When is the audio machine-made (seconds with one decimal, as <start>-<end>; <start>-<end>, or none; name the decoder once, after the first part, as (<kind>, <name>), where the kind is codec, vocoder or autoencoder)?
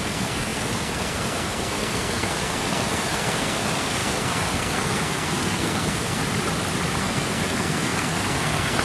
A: 0.0-6.2 (codec, SNAC); 7.0-8.8